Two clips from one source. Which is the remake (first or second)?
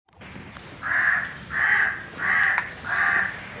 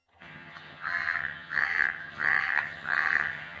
second